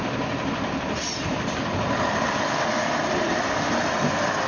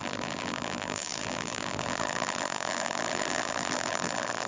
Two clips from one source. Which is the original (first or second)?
first